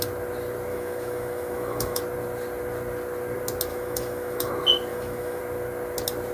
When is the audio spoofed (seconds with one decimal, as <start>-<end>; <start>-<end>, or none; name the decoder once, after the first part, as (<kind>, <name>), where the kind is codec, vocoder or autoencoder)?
0.7-2.0 (autoencoder, DAC-VAE); 3.7-4.5; 4.9-5.4